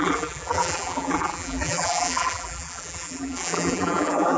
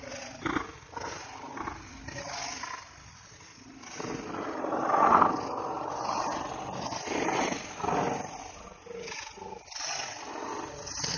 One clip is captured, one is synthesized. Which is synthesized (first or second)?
first